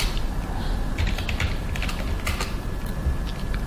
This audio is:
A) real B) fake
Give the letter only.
A